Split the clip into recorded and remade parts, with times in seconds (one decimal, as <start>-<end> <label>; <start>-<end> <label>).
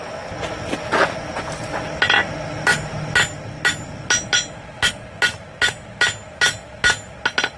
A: 0.0-7.6 recorded